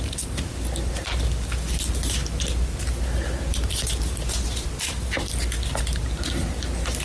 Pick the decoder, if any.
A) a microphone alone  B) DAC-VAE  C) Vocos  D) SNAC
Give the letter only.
A